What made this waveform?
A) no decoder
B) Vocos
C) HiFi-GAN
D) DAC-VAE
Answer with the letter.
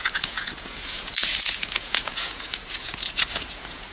B